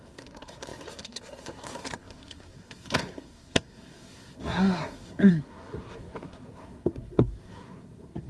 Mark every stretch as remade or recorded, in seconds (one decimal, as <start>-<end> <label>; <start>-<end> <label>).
0.0-8.3 remade